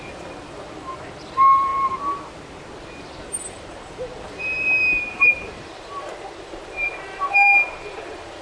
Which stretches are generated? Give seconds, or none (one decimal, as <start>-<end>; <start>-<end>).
0.0-1.7; 3.0-8.4